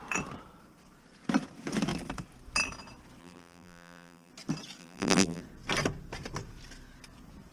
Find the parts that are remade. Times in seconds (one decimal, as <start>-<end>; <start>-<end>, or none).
3.2-4.3; 4.8-5.4

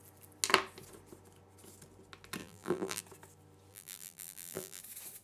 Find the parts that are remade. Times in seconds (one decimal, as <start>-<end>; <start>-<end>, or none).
2.4-3.0; 3.7-4.8

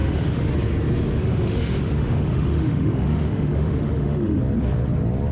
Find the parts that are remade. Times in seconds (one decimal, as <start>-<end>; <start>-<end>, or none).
0.0-0.5; 1.2-4.4

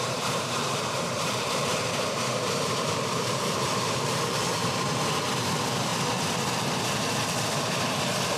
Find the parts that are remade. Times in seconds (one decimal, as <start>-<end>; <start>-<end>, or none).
0.0-5.9

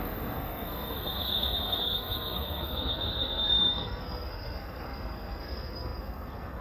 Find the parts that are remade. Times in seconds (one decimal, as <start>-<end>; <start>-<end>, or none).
0.0-6.6

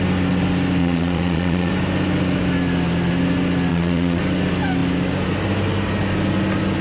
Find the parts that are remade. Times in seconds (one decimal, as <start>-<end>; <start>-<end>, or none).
0.8-1.7; 3.7-4.2

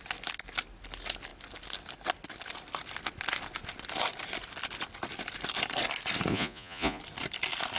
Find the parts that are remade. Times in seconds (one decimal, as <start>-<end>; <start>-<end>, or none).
6.3-7.0

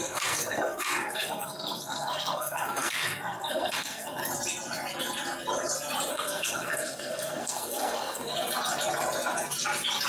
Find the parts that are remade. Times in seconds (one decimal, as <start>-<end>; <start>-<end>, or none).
0.0-4.2; 6.1-8.3